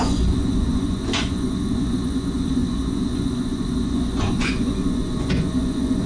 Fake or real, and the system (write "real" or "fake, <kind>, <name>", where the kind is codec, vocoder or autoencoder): fake, vocoder, Vocos